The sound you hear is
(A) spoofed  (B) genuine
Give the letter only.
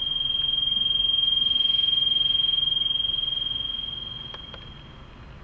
B